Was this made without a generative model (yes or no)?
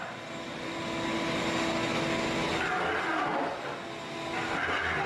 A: yes